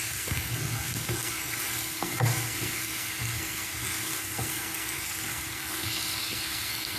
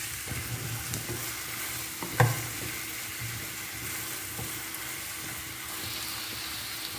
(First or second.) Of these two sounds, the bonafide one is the second